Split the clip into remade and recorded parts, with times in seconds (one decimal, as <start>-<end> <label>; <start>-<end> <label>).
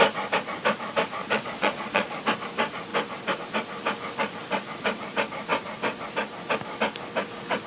0.0-1.2 recorded; 1.2-2.2 remade; 2.2-7.7 recorded